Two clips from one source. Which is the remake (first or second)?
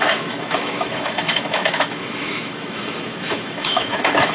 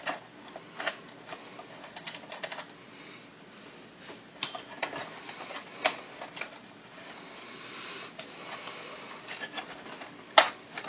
first